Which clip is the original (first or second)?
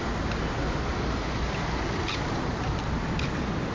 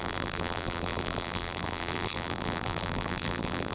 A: first